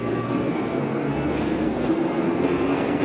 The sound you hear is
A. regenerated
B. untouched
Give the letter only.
A